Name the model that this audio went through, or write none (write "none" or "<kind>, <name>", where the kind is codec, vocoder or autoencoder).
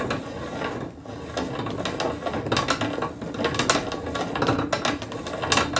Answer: none